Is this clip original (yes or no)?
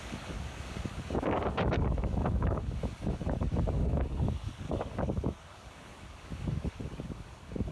no